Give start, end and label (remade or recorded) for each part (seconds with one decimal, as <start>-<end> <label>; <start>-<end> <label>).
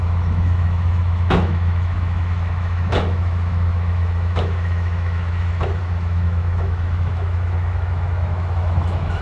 0.0-9.2 remade